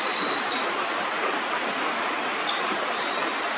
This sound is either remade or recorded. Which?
recorded